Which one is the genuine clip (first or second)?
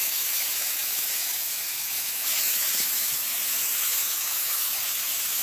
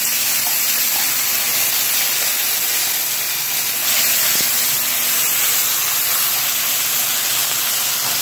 second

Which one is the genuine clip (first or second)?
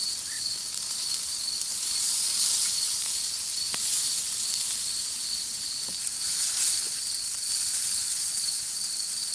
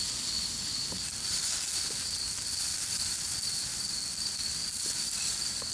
second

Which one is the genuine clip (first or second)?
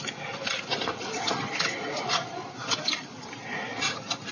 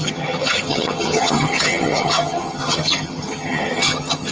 first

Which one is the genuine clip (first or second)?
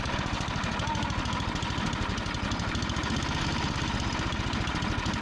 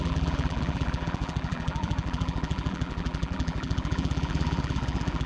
first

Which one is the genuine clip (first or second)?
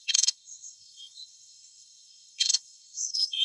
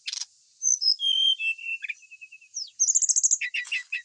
second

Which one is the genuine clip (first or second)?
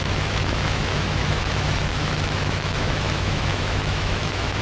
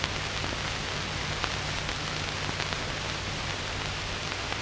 second